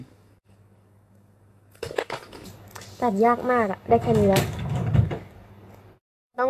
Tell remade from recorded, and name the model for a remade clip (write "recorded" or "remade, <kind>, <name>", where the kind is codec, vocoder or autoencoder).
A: remade, codec, DAC